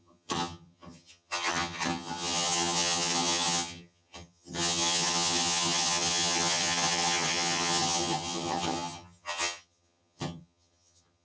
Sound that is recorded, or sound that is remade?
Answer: remade